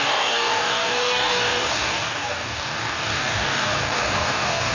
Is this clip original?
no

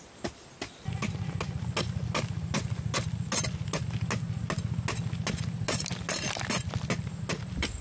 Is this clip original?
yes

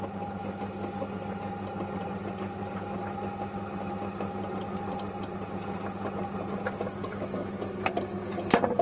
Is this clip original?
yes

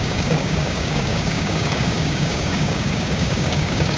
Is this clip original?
no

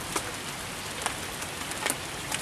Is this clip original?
yes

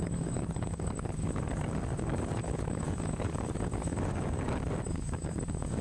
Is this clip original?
no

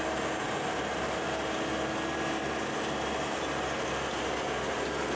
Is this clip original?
yes